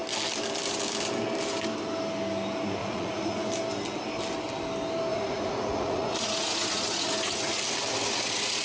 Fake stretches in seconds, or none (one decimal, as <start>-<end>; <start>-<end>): 2.8-3.5; 5.1-7.6